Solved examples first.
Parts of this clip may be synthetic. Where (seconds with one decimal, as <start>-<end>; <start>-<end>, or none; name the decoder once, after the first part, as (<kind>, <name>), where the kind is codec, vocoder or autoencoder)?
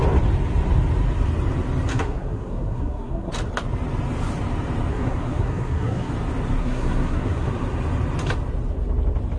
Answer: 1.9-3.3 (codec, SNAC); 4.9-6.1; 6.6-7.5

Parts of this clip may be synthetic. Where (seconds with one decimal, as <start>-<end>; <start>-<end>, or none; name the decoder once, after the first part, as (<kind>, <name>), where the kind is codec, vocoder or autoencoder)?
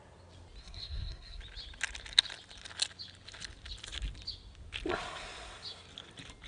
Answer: 0.6-1.4 (codec, SNAC)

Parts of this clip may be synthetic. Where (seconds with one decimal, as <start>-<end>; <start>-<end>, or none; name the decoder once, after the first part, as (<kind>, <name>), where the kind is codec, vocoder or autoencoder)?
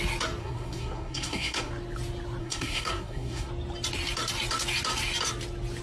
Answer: 0.4-1.7 (codec, SNAC); 2.4-3.5